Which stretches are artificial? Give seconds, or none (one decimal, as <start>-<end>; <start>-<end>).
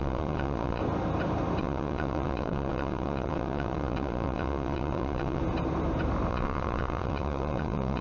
0.0-0.8; 1.6-5.4; 6.3-8.0